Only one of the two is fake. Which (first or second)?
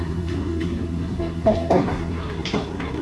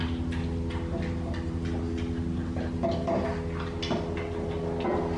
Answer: first